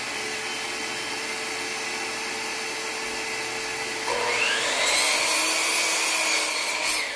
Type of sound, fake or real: real